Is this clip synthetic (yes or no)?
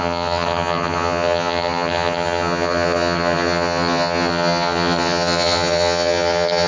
yes